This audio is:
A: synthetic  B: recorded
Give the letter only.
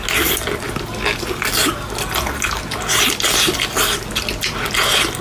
B